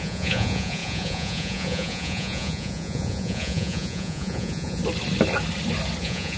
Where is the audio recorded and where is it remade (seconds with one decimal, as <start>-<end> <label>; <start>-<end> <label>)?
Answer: 0.0-4.8 remade; 4.8-6.0 recorded; 6.0-6.4 remade